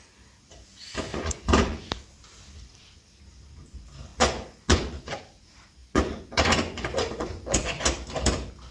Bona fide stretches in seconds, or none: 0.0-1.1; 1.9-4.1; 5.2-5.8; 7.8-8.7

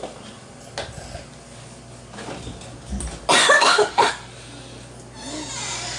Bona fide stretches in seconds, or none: 0.0-3.4; 4.1-6.0

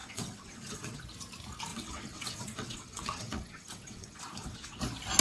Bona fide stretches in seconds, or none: 1.0-1.7; 4.8-5.2

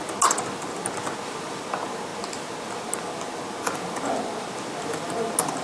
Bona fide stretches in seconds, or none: 0.0-5.6

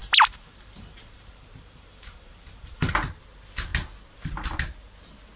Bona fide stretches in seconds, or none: 2.9-5.4

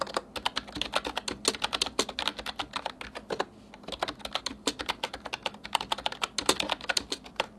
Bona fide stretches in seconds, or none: 0.0-7.6

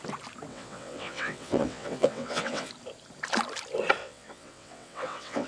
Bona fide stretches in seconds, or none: 0.0-0.5; 2.7-4.0